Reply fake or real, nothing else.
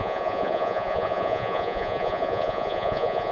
fake